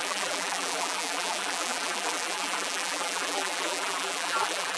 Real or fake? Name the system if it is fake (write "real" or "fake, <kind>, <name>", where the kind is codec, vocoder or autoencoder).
fake, vocoder, BigVGAN v2